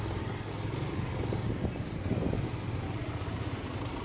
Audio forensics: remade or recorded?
recorded